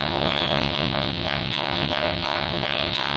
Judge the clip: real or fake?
fake